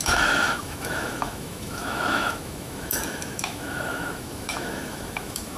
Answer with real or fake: fake